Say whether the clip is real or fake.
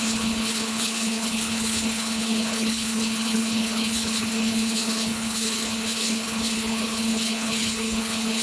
fake